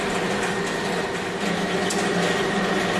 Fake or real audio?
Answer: real